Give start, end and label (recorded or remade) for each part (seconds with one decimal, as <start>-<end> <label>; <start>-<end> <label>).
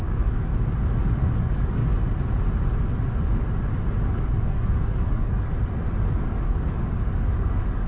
0.0-0.5 remade; 0.5-1.0 recorded; 1.0-1.8 remade; 1.8-4.0 recorded; 4.0-5.5 remade; 5.5-6.1 recorded; 6.1-7.9 remade